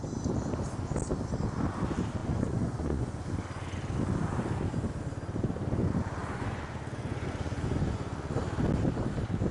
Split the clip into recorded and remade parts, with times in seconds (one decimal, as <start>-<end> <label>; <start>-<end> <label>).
0.0-2.2 recorded; 2.2-3.3 remade; 3.3-6.2 recorded; 6.2-8.4 remade; 8.4-9.5 recorded